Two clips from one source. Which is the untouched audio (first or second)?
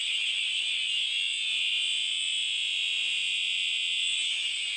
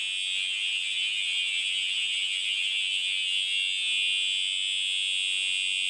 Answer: second